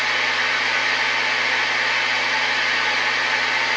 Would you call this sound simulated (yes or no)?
no